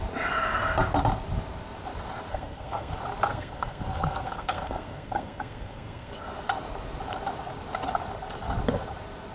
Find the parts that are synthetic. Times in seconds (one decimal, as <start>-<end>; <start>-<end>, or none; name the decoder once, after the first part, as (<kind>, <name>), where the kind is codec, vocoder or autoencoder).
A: 2.3-2.9 (codec, SNAC); 3.3-6.1